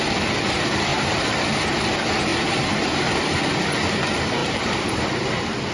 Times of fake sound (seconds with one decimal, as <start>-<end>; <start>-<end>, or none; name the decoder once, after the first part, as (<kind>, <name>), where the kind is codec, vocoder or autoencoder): 2.3-3.0 (vocoder, BigVGAN v2); 4.4-5.3